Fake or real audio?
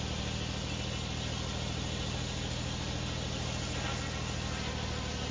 real